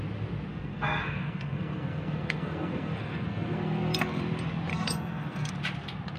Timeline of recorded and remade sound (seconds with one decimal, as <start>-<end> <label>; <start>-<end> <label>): 0.0-0.5 recorded; 0.5-4.2 remade; 4.2-4.7 recorded; 4.7-5.5 remade; 5.5-6.2 recorded